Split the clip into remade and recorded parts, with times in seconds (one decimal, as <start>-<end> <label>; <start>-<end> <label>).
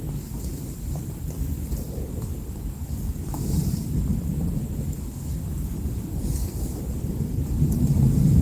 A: 0.0-6.1 recorded; 6.1-6.8 remade; 6.8-8.4 recorded